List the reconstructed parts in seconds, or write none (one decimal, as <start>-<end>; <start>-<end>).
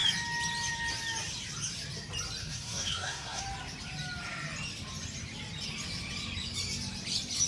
2.4-3.4